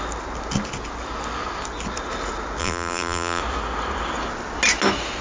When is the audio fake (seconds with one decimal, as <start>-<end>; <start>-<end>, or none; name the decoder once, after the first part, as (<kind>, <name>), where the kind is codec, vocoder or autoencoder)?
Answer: 2.6-3.4 (vocoder, BigVGAN v2)